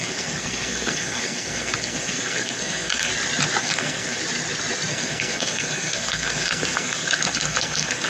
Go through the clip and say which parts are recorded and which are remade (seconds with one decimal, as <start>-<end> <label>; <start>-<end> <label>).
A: 0.0-3.1 remade; 3.1-3.6 recorded; 3.6-4.2 remade; 4.2-4.9 recorded; 4.9-8.1 remade